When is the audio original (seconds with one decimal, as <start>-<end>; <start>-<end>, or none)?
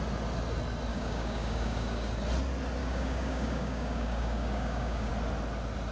0.0-0.9; 2.1-2.8; 5.1-5.9